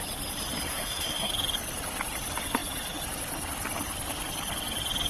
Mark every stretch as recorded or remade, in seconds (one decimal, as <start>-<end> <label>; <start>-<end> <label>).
0.0-0.7 recorded; 0.7-1.3 remade; 1.3-5.1 recorded